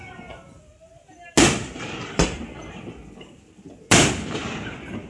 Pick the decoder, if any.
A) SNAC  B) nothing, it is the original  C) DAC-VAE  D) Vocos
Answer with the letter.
B